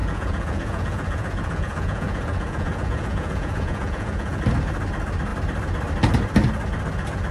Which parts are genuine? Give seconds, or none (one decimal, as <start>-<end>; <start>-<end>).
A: 4.4-7.3